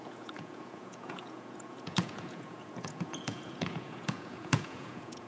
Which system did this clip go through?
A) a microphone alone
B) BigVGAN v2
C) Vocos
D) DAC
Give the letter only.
C